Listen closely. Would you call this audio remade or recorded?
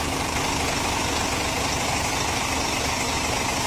recorded